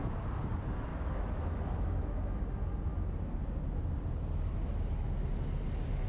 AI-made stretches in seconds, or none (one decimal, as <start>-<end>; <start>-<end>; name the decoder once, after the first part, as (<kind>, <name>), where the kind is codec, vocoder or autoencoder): 0.9-2.4 (autoencoder, DAC-VAE)